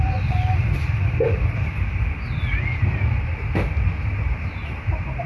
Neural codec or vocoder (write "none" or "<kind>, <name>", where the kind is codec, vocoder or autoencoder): vocoder, BigVGAN v2